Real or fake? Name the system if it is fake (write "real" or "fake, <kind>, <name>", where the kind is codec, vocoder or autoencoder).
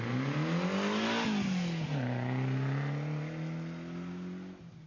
real